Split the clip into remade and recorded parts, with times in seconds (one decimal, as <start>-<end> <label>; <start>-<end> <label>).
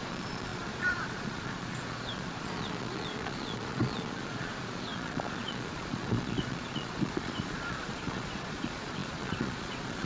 0.0-10.1 remade